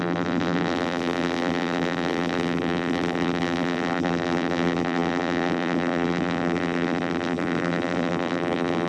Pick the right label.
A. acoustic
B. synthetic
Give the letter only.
B